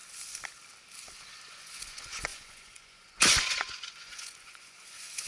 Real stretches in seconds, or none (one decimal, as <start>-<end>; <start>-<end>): 0.0-1.5